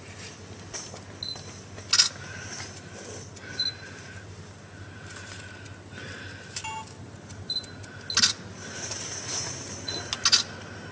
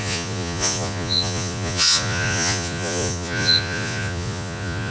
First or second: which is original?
first